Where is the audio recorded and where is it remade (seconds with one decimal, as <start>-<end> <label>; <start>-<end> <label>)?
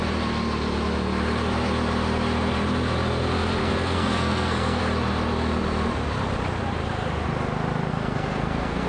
0.0-3.6 recorded; 3.6-4.8 remade; 4.8-7.9 recorded; 7.9-8.9 remade